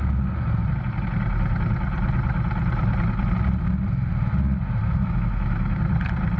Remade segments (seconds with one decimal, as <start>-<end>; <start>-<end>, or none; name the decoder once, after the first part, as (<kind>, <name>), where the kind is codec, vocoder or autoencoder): 4.8-5.8 (autoencoder, DAC-VAE)